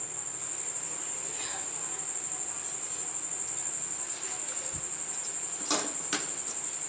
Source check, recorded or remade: recorded